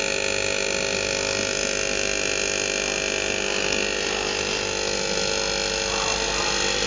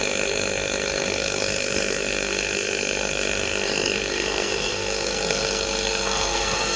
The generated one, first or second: second